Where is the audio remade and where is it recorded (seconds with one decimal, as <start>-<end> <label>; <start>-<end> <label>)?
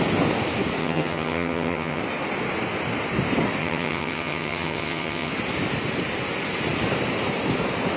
0.0-0.8 recorded; 0.8-2.0 remade; 2.0-3.6 recorded; 3.6-5.3 remade; 5.3-8.0 recorded